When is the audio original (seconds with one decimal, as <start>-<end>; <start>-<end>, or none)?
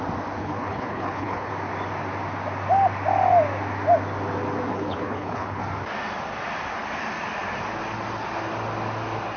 0.0-0.4; 1.5-4.7; 5.6-9.4